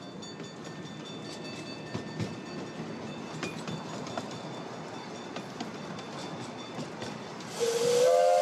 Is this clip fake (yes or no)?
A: no